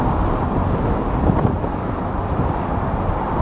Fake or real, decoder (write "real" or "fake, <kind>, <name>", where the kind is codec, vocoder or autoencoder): real